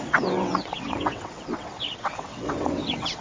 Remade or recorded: remade